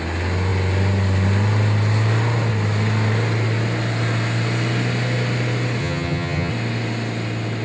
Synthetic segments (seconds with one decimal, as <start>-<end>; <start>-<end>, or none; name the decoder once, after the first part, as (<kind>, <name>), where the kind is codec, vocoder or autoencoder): 5.8-6.5 (vocoder, HiFi-GAN)